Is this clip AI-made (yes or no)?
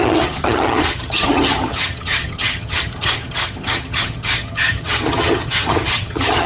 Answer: yes